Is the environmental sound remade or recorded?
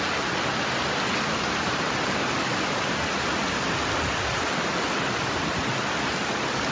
recorded